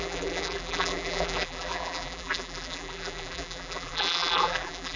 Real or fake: fake